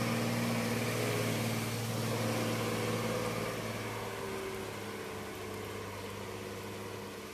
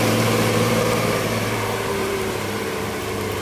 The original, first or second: first